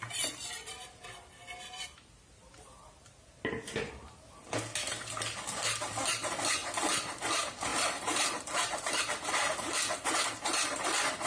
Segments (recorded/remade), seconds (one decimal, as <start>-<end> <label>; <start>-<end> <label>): 0.0-7.7 recorded; 7.7-9.1 remade; 9.1-11.3 recorded

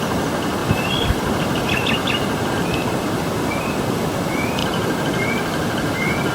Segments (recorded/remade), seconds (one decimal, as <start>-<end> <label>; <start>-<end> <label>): 0.0-0.6 recorded; 0.6-3.6 remade; 3.6-4.6 recorded; 4.6-6.3 remade

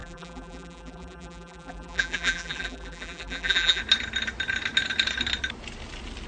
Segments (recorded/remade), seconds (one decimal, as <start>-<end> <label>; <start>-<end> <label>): 0.0-3.8 remade; 3.8-6.3 recorded

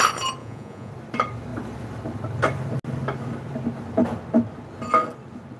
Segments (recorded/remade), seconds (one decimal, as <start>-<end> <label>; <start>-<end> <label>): 0.0-0.4 recorded; 0.4-0.9 remade; 0.9-5.6 recorded

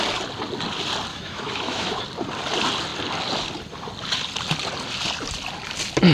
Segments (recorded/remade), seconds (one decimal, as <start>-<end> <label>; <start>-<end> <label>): 0.0-1.1 recorded; 1.1-2.0 remade; 2.0-6.1 recorded

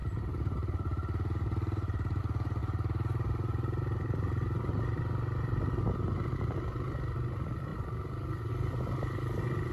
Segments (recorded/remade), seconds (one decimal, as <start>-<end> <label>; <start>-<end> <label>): 0.0-2.2 remade; 2.2-2.6 recorded; 2.6-4.8 remade; 4.8-9.7 recorded

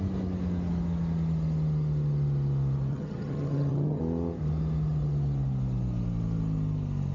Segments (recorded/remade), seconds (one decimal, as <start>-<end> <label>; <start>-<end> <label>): 0.0-2.9 recorded; 2.9-4.0 remade; 4.0-7.1 recorded

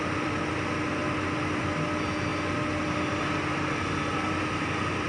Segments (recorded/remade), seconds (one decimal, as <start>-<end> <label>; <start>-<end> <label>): 0.0-5.1 recorded